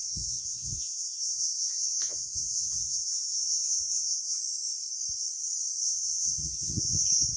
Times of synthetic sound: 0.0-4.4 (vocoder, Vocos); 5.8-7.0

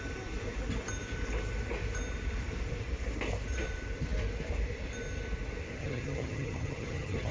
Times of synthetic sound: 5.8-7.3 (vocoder, HiFi-GAN)

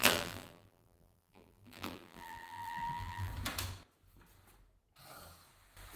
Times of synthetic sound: 0.0-3.3 (vocoder, BigVGAN v2)